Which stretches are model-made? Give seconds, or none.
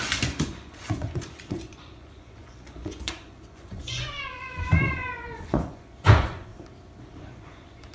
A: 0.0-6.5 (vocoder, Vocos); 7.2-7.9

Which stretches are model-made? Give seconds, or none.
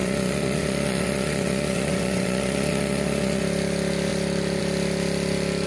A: 0.0-3.4 (vocoder, Vocos)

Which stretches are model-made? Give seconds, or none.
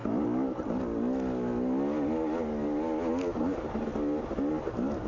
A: none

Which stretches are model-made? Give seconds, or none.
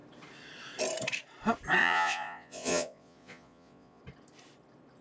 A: 1.8-4.0 (vocoder, Vocos)